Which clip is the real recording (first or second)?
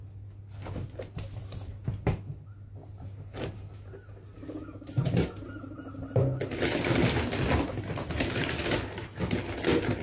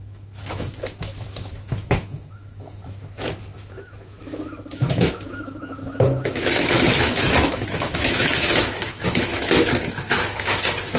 first